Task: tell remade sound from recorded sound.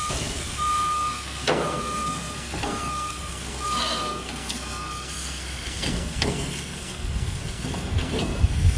remade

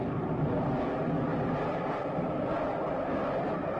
recorded